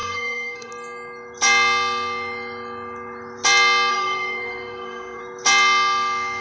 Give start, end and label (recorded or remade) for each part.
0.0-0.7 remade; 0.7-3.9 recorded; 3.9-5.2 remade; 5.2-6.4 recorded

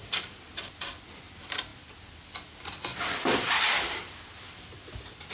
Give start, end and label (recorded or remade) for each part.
0.0-5.3 recorded

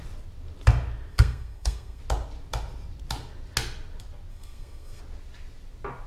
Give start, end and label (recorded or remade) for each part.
0.0-1.1 recorded; 1.1-2.0 remade; 2.0-4.3 recorded; 4.3-5.0 remade; 5.0-6.1 recorded

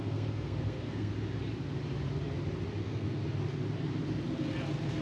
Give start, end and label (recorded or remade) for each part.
0.0-1.1 remade; 1.1-2.8 recorded; 2.8-3.2 remade; 3.2-5.0 recorded

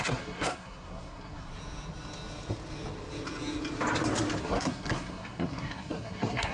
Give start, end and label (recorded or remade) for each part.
0.0-1.5 remade; 1.5-4.4 recorded; 4.4-6.5 remade